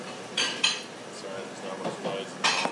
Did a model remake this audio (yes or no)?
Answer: no